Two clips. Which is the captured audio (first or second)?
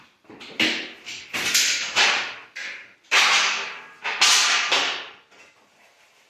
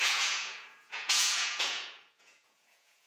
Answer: first